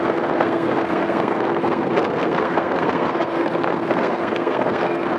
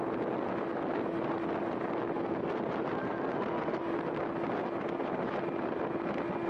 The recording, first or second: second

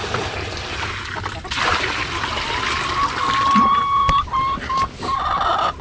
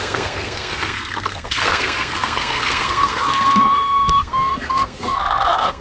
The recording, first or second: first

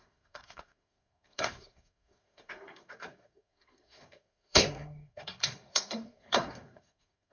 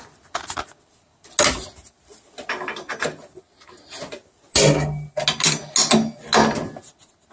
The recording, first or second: second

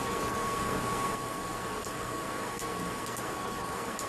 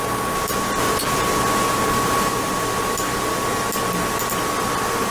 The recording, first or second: second